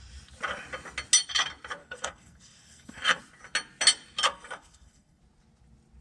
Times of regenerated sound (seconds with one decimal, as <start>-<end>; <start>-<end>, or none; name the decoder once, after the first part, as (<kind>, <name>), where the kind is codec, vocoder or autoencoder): 1.8-3.2 (codec, SNAC); 4.3-5.2